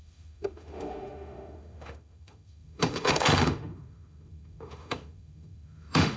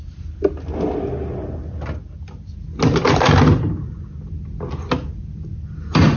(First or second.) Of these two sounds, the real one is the second